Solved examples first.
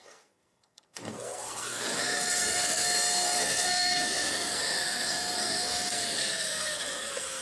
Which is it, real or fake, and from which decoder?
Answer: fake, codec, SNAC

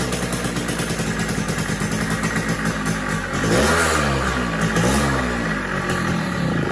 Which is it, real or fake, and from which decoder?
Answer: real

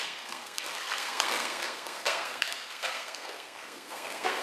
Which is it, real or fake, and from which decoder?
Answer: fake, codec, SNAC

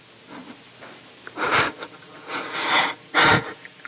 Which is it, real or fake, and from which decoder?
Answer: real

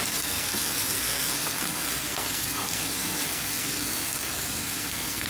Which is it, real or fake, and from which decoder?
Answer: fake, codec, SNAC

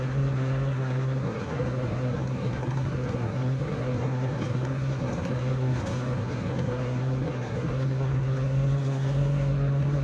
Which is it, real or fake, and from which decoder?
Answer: fake, codec, SNAC